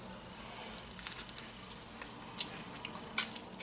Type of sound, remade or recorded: recorded